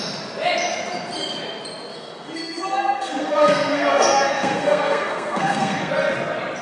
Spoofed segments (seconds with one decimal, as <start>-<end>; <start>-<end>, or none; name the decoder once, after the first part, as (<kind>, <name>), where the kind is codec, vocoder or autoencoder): 1.9-5.9 (codec, SNAC)